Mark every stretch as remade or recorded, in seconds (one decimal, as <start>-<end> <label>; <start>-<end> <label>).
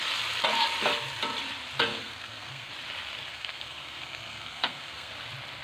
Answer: 0.0-1.9 recorded; 1.9-2.7 remade; 2.7-3.3 recorded; 3.3-5.1 remade; 5.1-5.6 recorded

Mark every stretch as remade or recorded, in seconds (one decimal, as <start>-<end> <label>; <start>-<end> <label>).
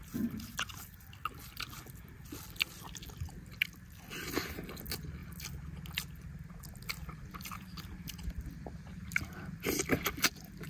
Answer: 0.0-10.7 recorded